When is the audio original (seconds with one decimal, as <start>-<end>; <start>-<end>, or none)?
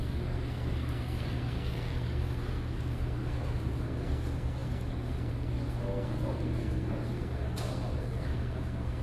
none